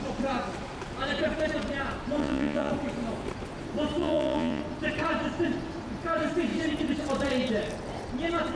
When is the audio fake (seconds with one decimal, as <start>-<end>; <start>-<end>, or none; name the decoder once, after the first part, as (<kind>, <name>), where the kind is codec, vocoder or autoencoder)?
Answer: 2.2-2.7 (vocoder, Vocos); 4.0-4.6